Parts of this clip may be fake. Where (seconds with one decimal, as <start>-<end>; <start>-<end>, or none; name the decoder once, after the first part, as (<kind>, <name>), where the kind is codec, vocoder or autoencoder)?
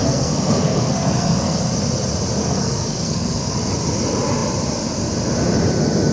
0.0-1.7 (codec, SNAC); 2.4-3.7